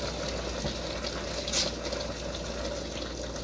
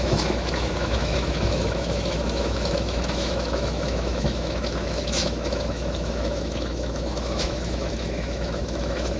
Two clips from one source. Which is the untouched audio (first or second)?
first